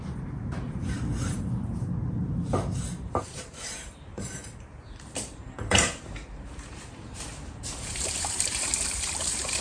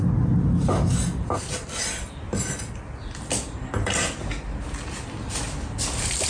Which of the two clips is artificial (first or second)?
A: first